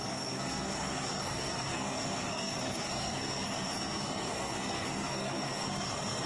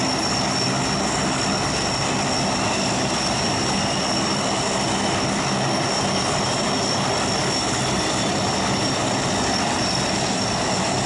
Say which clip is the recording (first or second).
second